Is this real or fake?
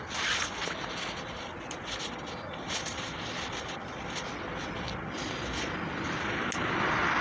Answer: real